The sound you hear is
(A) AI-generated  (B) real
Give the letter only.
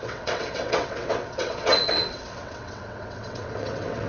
A